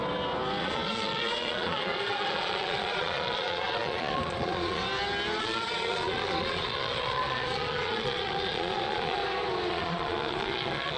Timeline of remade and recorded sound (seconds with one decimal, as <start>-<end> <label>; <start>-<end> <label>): 0.0-0.6 recorded; 0.6-4.8 remade; 4.8-5.4 recorded; 5.4-9.2 remade; 9.2-9.7 recorded; 9.7-11.0 remade